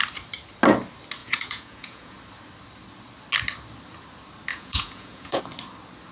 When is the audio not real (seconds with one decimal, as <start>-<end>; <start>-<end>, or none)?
1.2-2.1; 4.5-5.4